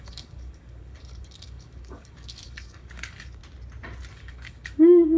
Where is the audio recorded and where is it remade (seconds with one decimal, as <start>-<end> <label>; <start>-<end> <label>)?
0.0-3.4 remade; 3.4-4.1 recorded; 4.1-5.2 remade